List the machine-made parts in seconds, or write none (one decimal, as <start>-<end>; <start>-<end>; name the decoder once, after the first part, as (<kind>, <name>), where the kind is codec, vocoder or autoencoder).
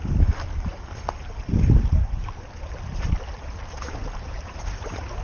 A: 2.0-2.7 (vocoder, BigVGAN v2); 4.0-5.2